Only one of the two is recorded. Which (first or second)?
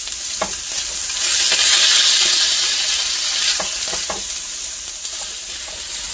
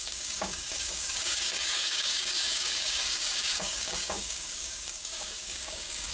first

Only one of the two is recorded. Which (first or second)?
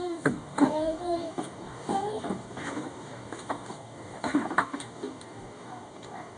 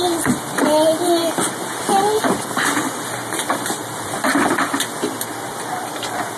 second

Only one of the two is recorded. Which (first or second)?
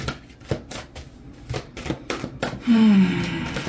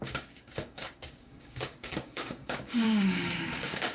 first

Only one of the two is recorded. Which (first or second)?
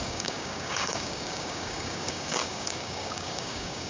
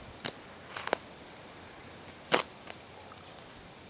second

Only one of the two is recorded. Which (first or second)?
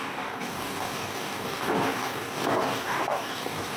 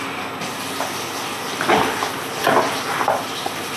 second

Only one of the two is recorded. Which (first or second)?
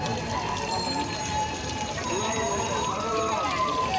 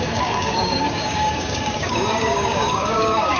first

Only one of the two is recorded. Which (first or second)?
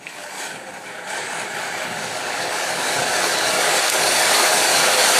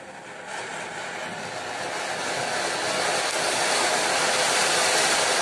second